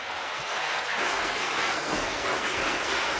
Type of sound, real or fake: fake